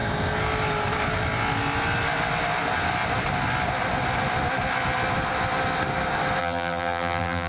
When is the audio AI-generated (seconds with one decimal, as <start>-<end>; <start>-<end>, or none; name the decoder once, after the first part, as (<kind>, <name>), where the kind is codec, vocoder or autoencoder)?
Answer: 6.4-7.5 (vocoder, BigVGAN v2)